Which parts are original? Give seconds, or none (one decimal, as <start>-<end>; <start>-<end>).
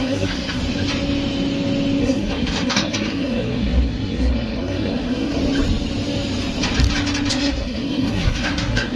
0.6-2.0; 5.4-7.3